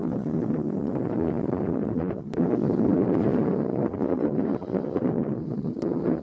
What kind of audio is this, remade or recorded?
remade